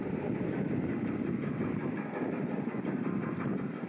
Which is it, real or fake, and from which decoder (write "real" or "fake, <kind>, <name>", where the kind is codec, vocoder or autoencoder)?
real